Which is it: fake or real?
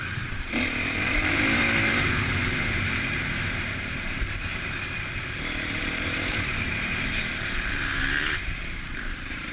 fake